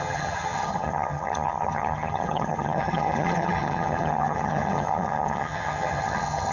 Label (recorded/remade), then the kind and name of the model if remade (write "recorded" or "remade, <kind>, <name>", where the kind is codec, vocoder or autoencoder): remade, vocoder, HiFi-GAN